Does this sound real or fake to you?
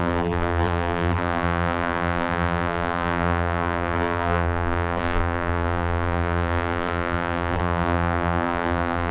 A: fake